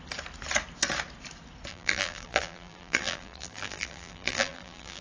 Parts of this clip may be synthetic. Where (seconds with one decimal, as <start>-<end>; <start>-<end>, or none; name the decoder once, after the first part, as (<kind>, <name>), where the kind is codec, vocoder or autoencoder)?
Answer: 1.7-5.0 (vocoder, BigVGAN v2)